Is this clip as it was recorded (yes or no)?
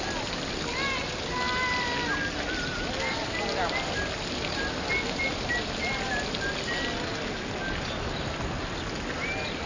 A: yes